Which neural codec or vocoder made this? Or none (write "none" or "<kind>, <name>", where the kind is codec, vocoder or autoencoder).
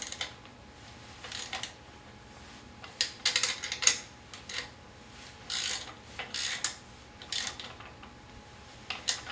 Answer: none